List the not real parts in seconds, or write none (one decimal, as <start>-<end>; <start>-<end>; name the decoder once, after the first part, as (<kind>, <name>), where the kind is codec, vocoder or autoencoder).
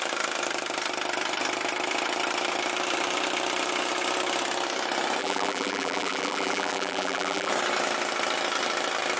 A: 5.2-7.5 (vocoder, BigVGAN v2)